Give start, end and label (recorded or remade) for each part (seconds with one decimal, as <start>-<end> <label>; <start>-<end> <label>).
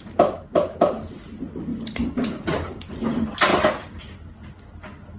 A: 0.0-1.7 recorded; 1.7-2.9 remade; 2.9-3.5 recorded; 3.5-4.0 remade; 4.0-5.2 recorded